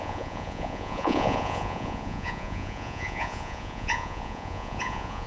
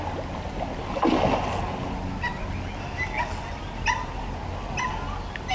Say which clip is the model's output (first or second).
first